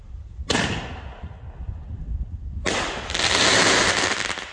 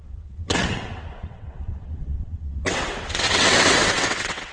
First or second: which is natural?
first